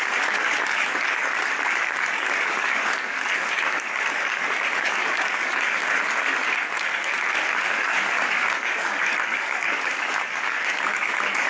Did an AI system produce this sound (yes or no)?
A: yes